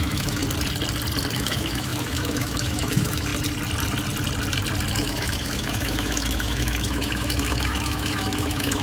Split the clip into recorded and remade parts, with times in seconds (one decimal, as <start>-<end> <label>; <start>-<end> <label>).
0.0-0.4 remade; 0.4-1.3 recorded; 1.3-3.3 remade; 3.3-4.9 recorded; 4.9-8.8 remade